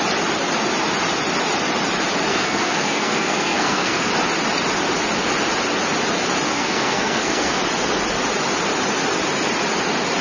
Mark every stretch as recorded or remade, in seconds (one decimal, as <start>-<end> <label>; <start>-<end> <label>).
0.0-2.3 recorded; 2.3-4.1 remade; 4.1-6.5 recorded; 6.5-7.6 remade; 7.6-10.2 recorded